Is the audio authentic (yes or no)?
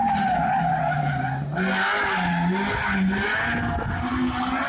yes